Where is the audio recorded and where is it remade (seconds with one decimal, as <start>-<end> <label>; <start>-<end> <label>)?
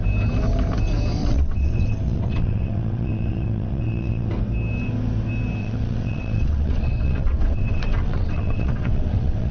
0.0-1.2 recorded; 1.2-4.3 remade; 4.3-5.6 recorded; 5.6-9.5 remade